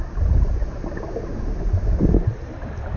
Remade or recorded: recorded